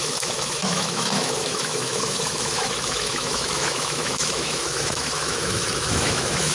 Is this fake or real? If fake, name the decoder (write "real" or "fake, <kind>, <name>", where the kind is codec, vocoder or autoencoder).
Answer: fake, autoencoder, DAC-VAE